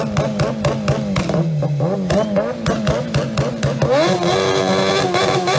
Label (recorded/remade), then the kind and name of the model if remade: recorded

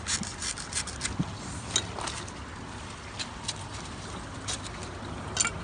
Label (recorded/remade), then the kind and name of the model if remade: recorded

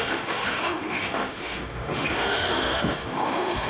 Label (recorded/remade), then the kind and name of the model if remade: remade, autoencoder, DAC-VAE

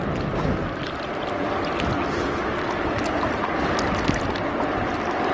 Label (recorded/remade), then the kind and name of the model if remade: recorded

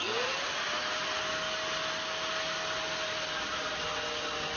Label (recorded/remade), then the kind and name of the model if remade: recorded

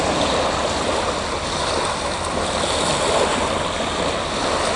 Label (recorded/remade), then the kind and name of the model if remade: recorded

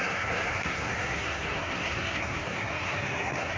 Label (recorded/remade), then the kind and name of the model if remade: remade, codec, SNAC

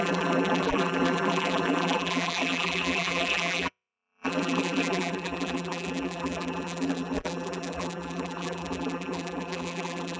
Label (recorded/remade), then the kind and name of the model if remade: remade, vocoder, BigVGAN v2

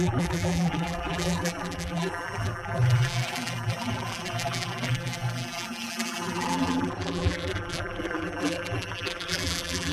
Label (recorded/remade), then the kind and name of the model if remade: remade, vocoder, BigVGAN v2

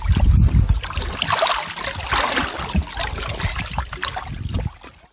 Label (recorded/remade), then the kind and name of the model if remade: recorded